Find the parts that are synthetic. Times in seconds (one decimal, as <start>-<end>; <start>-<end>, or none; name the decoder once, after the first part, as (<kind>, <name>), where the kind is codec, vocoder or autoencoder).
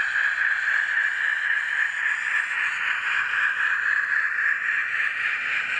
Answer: none